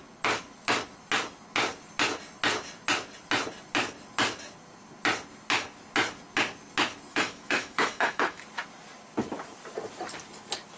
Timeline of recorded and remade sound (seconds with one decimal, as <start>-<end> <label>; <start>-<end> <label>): 0.0-7.1 recorded; 7.1-8.4 remade; 8.4-10.8 recorded